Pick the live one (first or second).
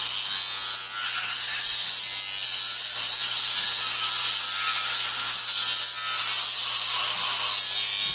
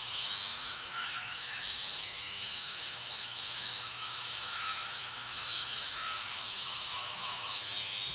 first